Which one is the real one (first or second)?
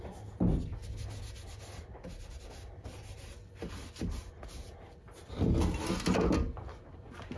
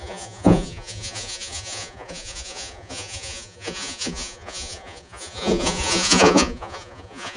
first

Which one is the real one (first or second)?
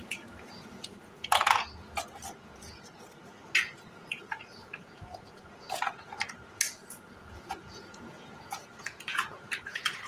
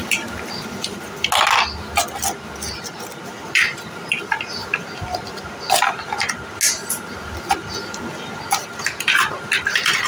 second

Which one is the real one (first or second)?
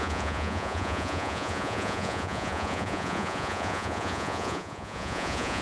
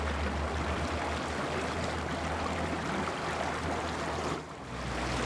second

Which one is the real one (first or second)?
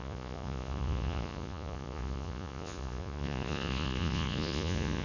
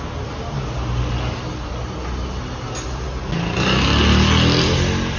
second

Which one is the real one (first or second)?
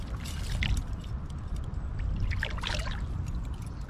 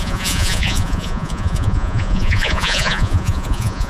first